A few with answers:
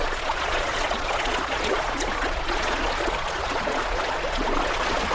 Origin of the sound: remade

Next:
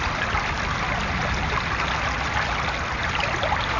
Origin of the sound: recorded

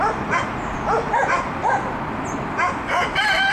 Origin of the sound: recorded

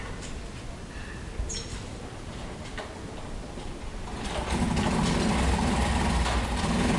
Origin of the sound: recorded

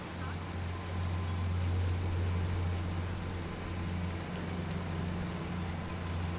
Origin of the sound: recorded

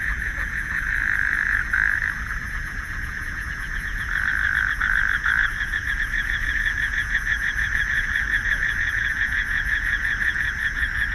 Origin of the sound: remade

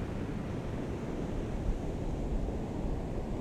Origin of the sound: recorded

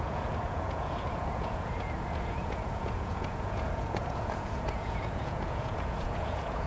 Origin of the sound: remade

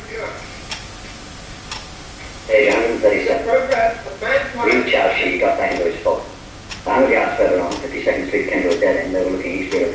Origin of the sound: recorded